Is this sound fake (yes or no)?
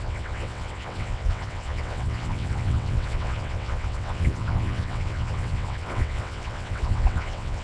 yes